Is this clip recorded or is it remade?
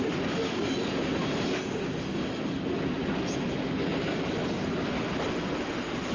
recorded